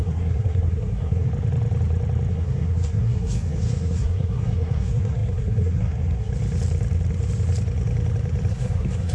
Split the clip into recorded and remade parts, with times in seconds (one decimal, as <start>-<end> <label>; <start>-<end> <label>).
0.0-1.3 remade; 1.3-2.3 recorded; 2.3-6.3 remade; 6.3-8.5 recorded; 8.5-9.1 remade